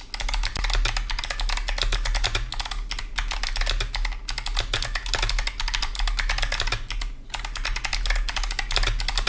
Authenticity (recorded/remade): recorded